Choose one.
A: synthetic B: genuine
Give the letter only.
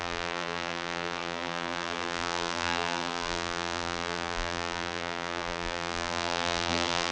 A